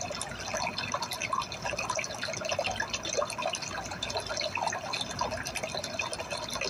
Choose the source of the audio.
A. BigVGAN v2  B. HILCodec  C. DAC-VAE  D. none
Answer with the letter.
D